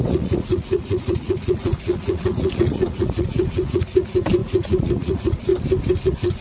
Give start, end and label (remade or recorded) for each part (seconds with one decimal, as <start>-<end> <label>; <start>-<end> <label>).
0.0-5.5 remade; 5.5-6.0 recorded; 6.0-6.4 remade